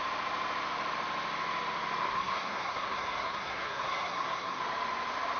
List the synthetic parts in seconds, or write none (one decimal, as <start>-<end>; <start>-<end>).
2.0-4.6

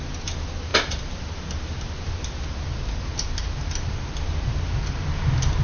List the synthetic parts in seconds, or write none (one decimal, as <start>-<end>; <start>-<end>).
none

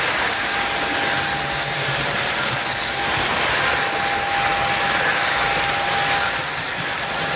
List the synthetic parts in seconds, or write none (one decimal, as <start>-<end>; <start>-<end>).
none

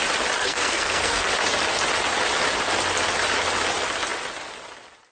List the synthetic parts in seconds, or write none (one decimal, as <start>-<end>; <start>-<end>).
0.4-1.2

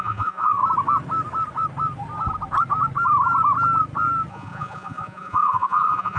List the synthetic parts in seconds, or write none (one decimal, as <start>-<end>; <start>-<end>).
0.0-0.6; 4.3-6.2

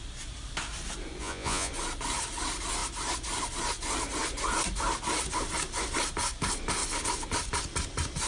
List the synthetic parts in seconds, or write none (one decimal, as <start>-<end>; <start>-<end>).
1.2-1.7

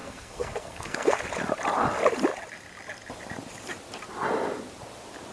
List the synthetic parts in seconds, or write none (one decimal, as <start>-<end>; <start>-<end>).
0.0-1.2

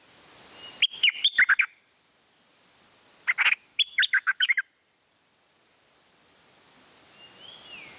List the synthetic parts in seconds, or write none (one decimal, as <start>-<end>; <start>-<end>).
3.7-4.6